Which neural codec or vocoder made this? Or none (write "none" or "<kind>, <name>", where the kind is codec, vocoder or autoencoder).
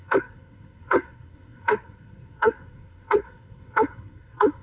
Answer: codec, SNAC